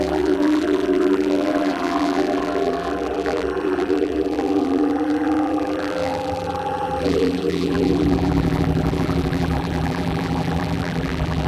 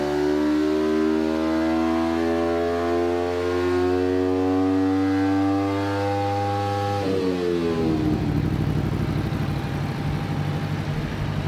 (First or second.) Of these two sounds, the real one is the second